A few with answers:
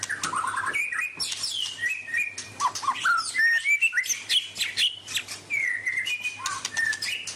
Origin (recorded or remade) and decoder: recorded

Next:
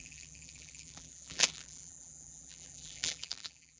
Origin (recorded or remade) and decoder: remade, vocoder, BigVGAN v2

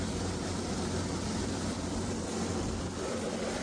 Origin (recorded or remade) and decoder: remade, vocoder, BigVGAN v2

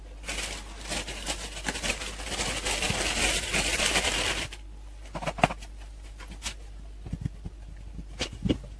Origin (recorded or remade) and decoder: recorded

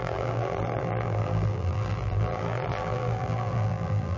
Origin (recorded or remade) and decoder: remade, vocoder, BigVGAN v2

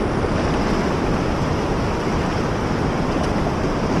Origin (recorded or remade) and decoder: recorded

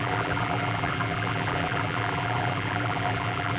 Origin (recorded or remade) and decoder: remade, vocoder, BigVGAN v2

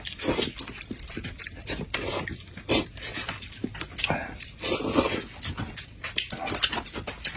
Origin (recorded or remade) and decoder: recorded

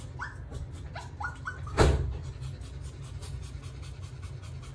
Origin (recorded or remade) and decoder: recorded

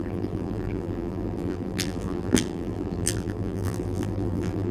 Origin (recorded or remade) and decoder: remade, vocoder, BigVGAN v2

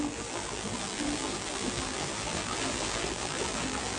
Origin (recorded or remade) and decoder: remade, vocoder, BigVGAN v2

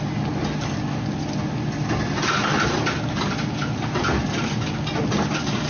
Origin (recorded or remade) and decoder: recorded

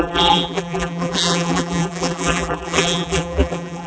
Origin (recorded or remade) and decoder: remade, vocoder, BigVGAN v2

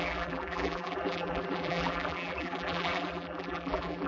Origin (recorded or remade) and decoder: remade, vocoder, BigVGAN v2